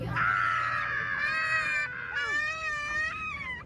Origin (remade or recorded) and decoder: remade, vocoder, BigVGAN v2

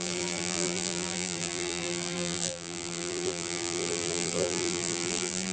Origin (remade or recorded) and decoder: remade, vocoder, BigVGAN v2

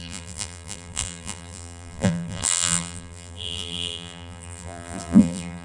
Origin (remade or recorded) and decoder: remade, vocoder, BigVGAN v2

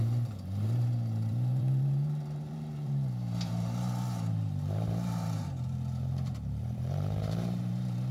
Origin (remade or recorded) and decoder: remade, vocoder, BigVGAN v2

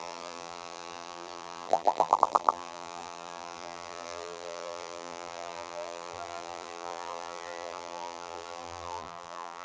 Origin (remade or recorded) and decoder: remade, vocoder, BigVGAN v2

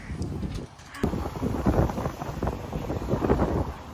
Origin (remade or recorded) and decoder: recorded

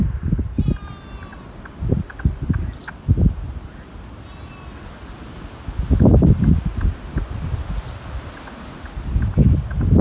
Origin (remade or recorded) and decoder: recorded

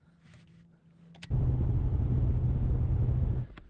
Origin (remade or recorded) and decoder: recorded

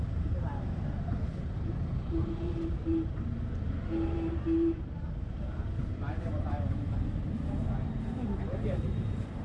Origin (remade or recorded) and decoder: remade, vocoder, BigVGAN v2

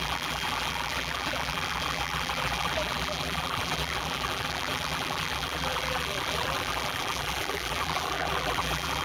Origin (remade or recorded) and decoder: remade, vocoder, BigVGAN v2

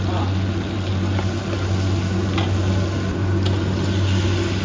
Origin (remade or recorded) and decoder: recorded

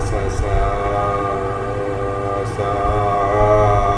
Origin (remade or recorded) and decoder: recorded